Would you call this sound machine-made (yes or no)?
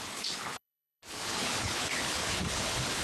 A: yes